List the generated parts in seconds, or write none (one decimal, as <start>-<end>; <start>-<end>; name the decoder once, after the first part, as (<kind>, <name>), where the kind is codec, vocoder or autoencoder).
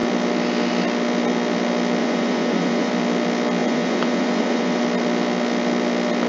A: 2.0-2.9 (vocoder, Vocos); 3.6-4.8